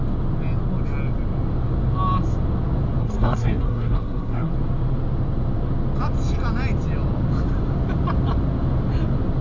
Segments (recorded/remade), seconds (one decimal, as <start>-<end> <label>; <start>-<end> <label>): 0.0-3.0 recorded; 3.0-4.5 remade; 4.5-9.4 recorded